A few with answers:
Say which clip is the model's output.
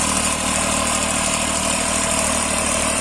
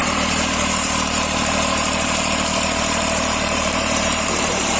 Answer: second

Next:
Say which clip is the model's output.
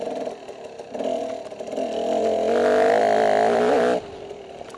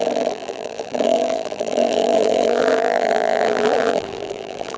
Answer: second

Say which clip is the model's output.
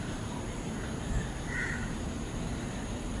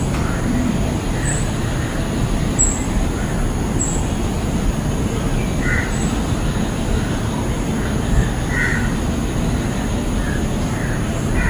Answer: first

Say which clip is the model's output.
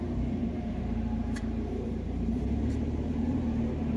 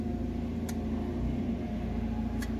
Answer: first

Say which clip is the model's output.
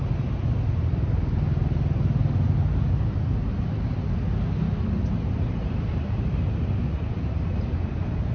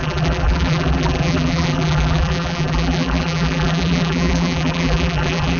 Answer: second